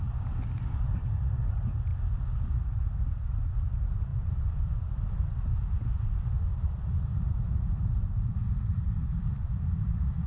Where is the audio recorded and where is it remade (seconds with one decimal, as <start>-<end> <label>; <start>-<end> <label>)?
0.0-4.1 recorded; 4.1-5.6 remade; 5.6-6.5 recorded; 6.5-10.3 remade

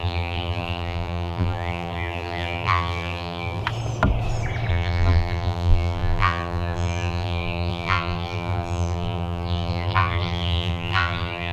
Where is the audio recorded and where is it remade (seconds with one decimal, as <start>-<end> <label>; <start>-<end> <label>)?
0.0-3.6 remade; 3.6-4.7 recorded; 4.7-11.5 remade

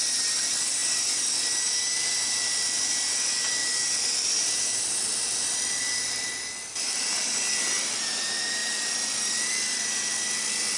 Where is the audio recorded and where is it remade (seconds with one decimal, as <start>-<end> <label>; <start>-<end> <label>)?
0.0-3.6 recorded; 3.6-5.8 remade; 5.8-10.8 recorded